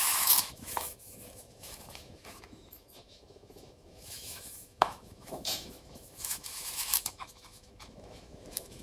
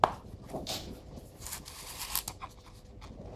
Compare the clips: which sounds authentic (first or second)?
second